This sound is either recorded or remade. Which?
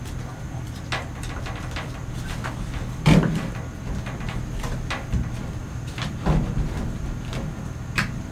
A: recorded